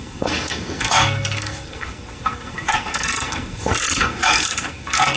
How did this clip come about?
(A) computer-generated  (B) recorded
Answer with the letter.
A